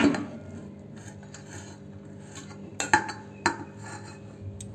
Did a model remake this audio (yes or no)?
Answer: no